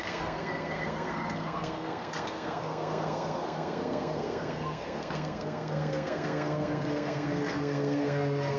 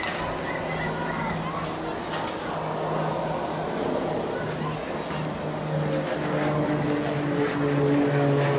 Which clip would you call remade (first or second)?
first